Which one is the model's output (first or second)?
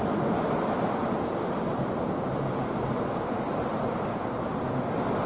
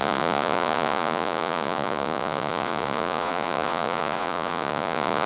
second